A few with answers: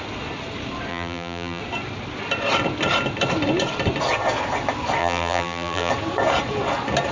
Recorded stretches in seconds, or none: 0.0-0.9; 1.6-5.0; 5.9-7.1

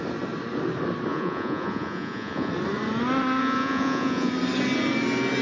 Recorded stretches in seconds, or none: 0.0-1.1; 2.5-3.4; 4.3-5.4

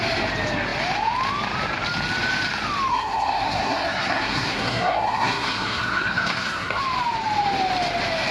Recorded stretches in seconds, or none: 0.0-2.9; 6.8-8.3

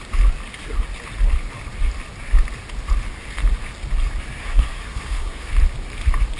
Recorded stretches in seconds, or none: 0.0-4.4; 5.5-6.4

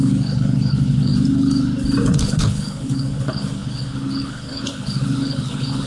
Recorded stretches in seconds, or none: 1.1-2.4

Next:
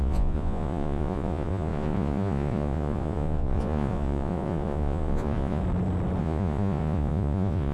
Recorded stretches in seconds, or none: 5.6-6.2